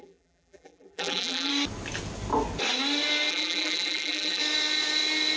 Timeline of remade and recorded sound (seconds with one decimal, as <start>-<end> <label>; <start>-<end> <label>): 0.0-1.5 remade; 1.5-3.3 recorded; 3.3-4.4 remade; 4.4-5.4 recorded